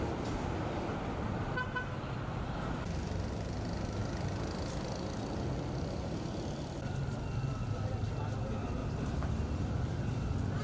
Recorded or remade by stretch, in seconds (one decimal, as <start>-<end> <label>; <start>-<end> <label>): 0.0-8.8 recorded; 8.8-9.6 remade; 9.6-10.6 recorded